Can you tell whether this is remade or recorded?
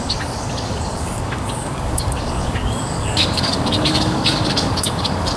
remade